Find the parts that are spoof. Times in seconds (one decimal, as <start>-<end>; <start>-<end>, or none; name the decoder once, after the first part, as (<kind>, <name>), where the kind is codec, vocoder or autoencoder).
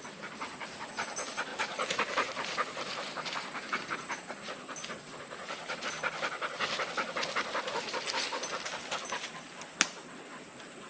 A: 1.5-5.8 (vocoder, BigVGAN v2)